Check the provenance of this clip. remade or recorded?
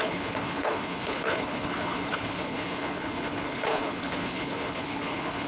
remade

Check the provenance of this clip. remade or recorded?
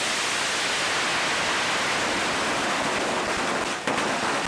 recorded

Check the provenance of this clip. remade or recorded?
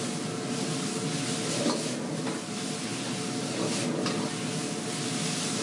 recorded